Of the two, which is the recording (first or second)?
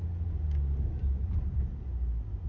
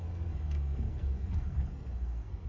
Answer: first